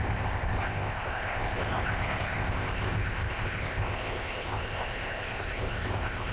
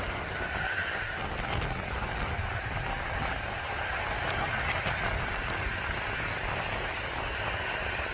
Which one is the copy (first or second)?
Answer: first